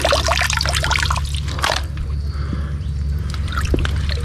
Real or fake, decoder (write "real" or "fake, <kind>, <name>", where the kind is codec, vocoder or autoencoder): real